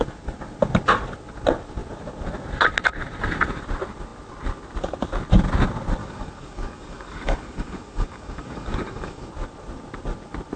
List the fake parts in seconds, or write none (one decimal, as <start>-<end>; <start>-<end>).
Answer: 6.0-9.3